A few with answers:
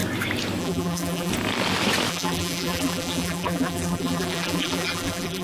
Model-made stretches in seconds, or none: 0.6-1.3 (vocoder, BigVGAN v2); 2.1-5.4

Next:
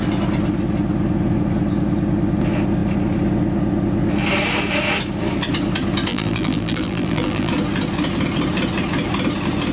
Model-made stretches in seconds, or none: 6.1-7.5 (vocoder, BigVGAN v2)

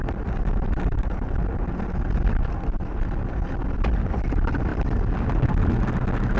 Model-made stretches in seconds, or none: none

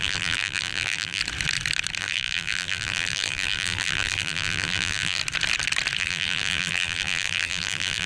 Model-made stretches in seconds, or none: 0.0-1.2 (vocoder, BigVGAN v2); 2.0-5.2; 6.0-8.1